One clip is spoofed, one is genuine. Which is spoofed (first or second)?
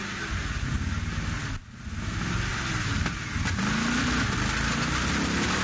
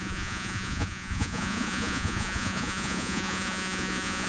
second